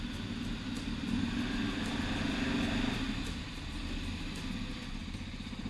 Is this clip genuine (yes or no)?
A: yes